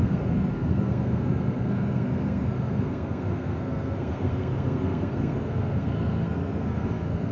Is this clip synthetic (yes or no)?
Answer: yes